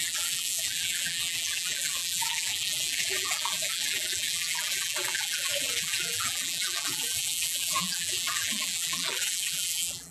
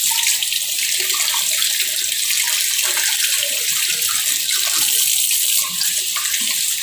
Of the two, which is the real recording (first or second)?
second